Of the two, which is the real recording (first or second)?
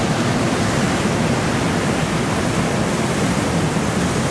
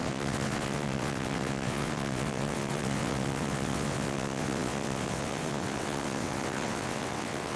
first